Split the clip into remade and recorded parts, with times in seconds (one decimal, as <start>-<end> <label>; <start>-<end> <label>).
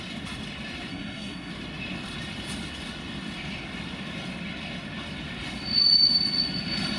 0.0-0.9 recorded; 0.9-1.5 remade; 1.5-7.0 recorded